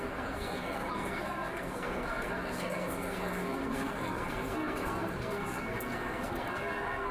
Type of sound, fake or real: fake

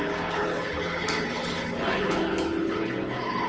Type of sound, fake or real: fake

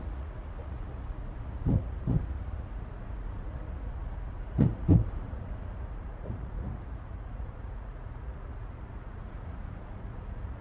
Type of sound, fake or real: fake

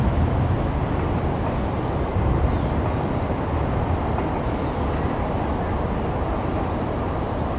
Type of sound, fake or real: real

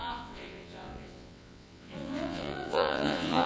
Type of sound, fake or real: fake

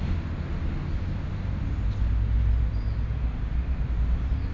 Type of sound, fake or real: real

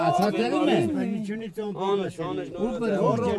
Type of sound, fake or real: fake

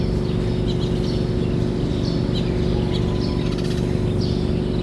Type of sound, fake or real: real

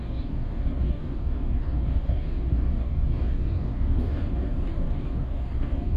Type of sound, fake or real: fake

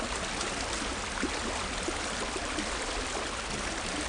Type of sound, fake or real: real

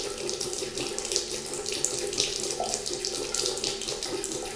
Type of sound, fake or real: real